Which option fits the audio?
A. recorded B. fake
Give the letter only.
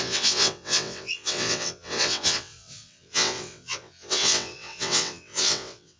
B